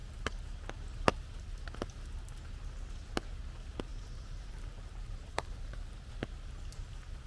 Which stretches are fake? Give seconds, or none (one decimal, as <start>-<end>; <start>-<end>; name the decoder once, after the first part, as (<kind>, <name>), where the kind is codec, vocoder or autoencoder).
3.9-6.1 (vocoder, BigVGAN v2)